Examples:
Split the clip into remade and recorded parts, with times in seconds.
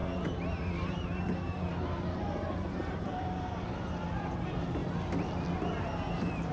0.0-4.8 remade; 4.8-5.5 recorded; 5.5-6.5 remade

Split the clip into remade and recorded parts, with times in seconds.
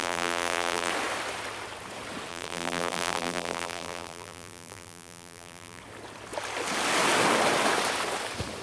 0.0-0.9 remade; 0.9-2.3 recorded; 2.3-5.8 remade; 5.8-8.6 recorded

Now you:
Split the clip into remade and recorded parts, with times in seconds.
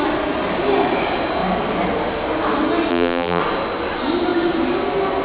0.0-2.9 recorded; 2.9-3.4 remade; 3.4-5.2 recorded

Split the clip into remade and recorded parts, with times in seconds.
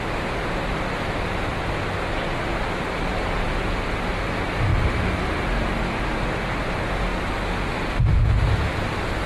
0.0-2.5 recorded; 2.5-3.8 remade; 3.8-4.7 recorded; 4.7-5.5 remade; 5.5-9.3 recorded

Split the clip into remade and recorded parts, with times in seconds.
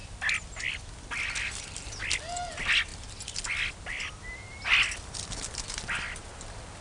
0.0-6.8 recorded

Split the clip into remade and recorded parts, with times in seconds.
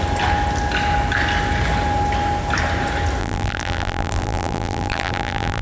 0.0-3.2 recorded; 3.2-5.6 remade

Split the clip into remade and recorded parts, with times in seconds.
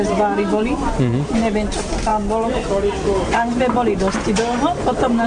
0.0-5.3 recorded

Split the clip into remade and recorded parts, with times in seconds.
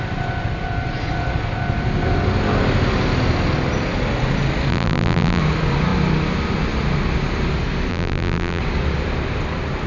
0.0-4.7 recorded; 4.7-5.4 remade; 5.4-7.9 recorded; 7.9-8.6 remade; 8.6-9.9 recorded